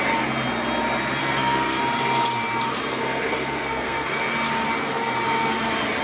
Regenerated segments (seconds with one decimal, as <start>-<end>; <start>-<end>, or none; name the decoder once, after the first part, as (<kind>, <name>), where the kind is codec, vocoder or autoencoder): 1.2-1.8 (codec, SNAC); 2.9-4.2